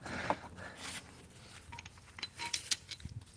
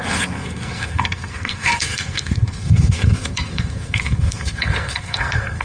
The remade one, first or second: second